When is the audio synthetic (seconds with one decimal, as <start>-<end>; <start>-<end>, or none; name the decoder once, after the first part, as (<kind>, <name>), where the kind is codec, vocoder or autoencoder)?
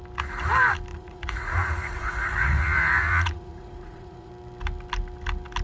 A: 0.9-4.3 (vocoder, Vocos)